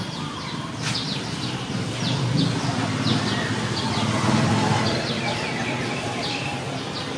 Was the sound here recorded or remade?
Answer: remade